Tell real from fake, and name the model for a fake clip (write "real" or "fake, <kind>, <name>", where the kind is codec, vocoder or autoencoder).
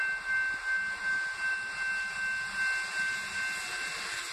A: real